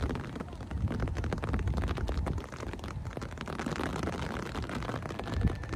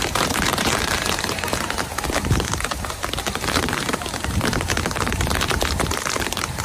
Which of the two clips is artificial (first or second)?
second